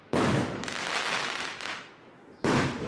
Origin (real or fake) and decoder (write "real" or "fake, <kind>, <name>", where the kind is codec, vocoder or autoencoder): fake, autoencoder, DAC-VAE